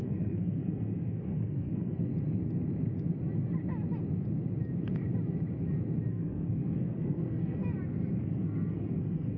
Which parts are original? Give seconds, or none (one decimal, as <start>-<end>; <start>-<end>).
2.1-6.1; 7.6-8.2